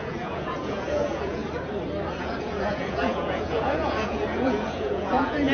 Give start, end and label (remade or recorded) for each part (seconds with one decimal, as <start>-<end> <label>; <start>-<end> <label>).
0.0-1.4 remade; 1.4-2.2 recorded; 2.2-5.5 remade